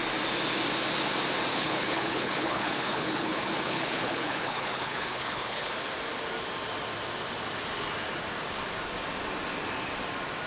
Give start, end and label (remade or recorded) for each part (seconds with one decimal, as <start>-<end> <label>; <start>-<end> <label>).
0.0-1.5 recorded; 1.5-5.7 remade; 5.7-10.5 recorded